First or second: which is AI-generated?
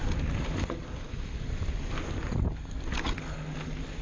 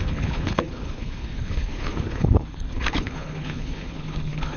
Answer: second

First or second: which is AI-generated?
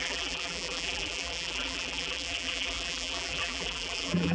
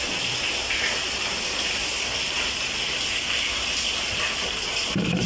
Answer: first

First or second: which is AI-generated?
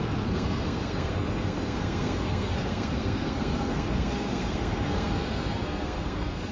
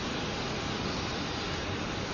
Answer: first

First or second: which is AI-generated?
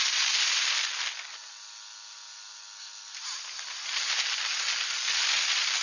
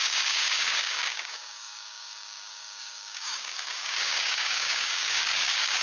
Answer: second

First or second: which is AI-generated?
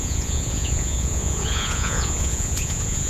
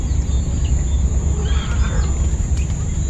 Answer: first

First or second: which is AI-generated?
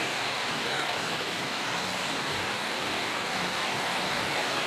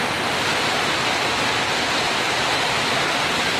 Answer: first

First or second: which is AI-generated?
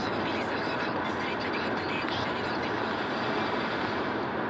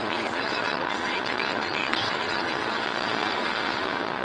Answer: second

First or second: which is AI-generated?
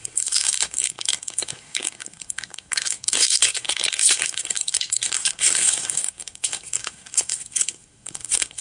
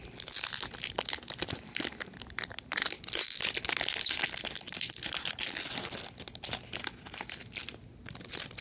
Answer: first